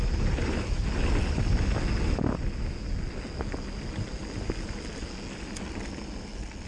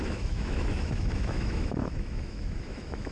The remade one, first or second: second